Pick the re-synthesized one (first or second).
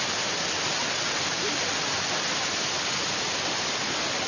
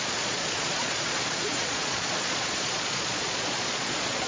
second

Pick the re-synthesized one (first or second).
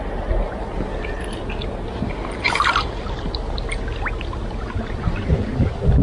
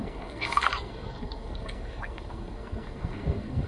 second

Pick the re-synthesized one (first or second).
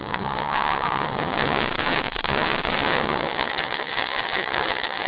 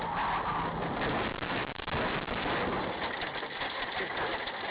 first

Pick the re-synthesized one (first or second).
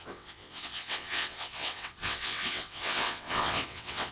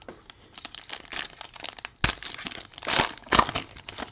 first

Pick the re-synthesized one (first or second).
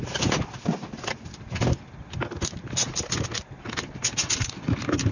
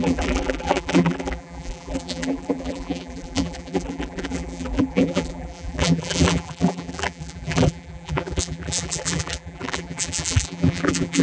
second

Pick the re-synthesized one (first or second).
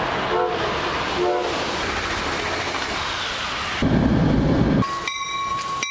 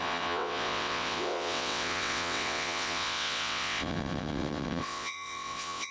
second